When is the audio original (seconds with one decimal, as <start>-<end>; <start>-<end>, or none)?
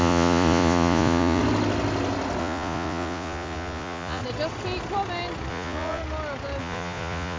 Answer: 1.4-2.4; 4.2-5.5; 6.0-6.6